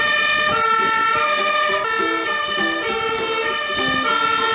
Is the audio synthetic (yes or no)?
no